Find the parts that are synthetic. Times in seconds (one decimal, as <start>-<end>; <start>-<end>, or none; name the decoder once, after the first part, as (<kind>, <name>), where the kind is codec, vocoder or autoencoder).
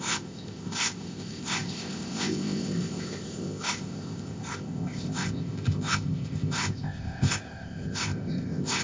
0.0-8.8 (codec, ZipCodec)